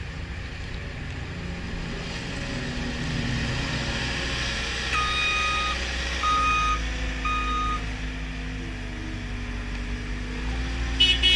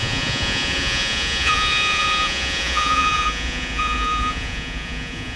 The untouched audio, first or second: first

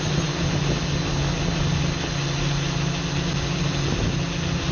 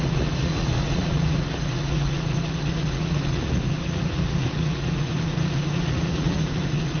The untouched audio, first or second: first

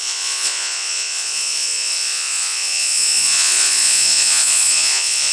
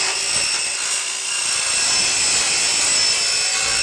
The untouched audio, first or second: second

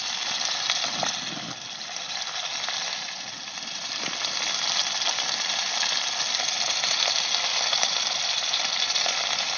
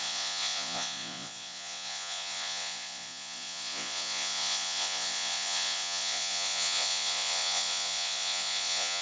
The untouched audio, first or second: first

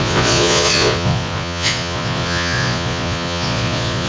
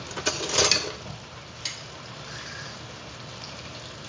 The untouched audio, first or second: second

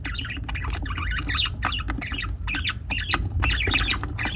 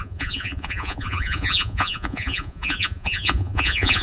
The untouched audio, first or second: first